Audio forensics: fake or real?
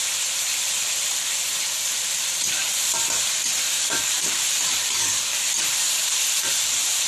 fake